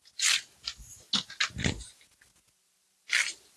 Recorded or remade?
recorded